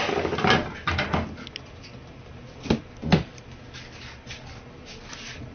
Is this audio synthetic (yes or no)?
no